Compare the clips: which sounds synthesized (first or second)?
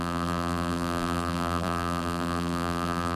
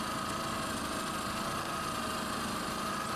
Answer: first